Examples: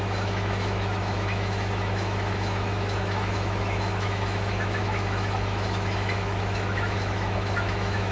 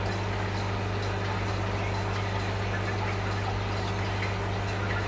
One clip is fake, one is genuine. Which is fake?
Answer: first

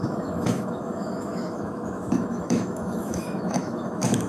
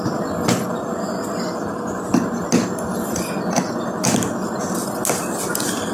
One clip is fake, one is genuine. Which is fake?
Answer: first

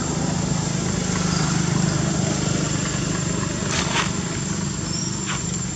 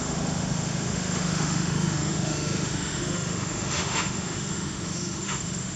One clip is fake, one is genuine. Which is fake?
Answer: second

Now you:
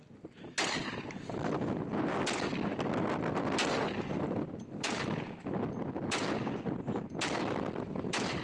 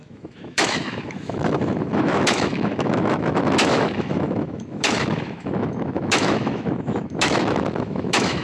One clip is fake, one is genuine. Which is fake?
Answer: second